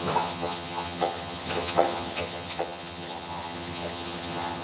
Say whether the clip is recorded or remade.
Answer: remade